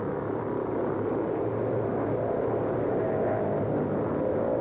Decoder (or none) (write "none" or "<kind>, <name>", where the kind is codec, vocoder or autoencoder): none